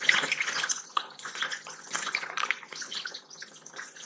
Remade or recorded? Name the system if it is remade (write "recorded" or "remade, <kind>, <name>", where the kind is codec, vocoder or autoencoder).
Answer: remade, vocoder, Vocos